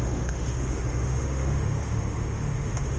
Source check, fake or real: fake